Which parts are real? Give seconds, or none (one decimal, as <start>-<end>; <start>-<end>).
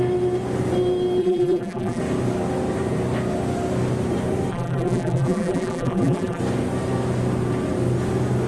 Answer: 0.0-1.2; 2.0-4.5; 6.4-8.5